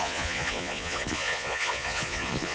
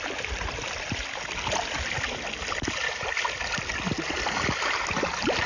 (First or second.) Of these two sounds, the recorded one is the second